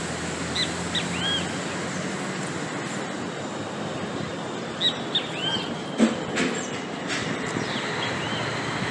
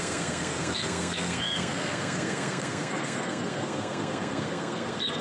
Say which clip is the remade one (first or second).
second